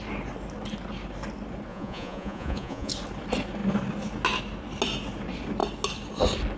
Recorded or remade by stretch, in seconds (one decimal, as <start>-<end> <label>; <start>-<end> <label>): 0.0-1.7 recorded; 1.7-2.9 remade; 2.9-6.6 recorded